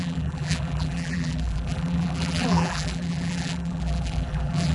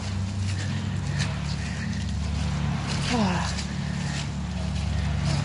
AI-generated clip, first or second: first